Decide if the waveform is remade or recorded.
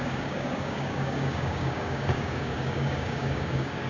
remade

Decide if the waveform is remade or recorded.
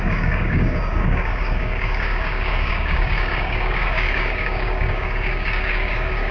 remade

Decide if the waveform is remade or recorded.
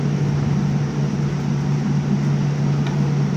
recorded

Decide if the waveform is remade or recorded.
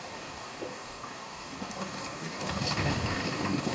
remade